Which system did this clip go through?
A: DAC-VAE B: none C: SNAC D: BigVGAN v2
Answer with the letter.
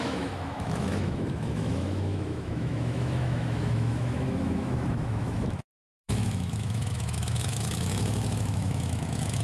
A